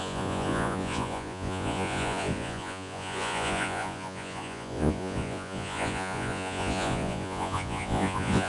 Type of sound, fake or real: fake